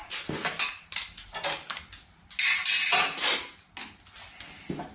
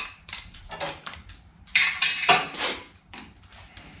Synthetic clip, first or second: second